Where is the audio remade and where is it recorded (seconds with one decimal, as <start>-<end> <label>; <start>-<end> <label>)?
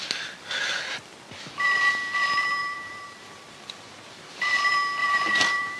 0.0-2.6 recorded; 2.6-3.7 remade; 3.7-5.0 recorded; 5.0-5.8 remade